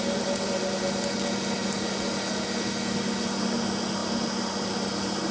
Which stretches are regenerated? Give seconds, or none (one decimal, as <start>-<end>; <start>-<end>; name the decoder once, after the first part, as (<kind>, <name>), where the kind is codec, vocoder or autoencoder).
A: none